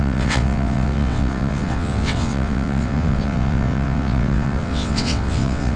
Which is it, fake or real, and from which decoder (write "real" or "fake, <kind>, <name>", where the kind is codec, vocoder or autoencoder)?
fake, vocoder, WaveNeXt